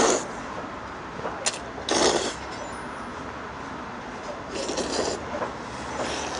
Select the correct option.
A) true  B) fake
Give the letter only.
A